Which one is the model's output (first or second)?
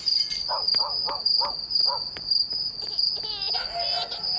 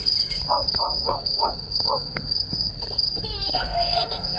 second